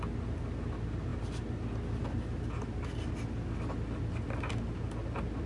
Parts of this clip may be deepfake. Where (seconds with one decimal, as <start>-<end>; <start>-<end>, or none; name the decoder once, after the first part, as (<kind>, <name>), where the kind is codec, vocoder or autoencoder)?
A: none